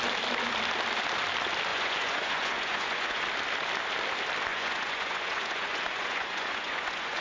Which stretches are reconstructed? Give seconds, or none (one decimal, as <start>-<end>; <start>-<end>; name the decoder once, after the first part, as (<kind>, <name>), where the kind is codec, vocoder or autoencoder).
1.7-3.2 (vocoder, Vocos); 4.5-7.2